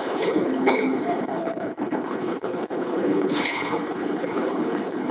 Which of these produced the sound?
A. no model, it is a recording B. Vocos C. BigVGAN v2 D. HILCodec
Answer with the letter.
D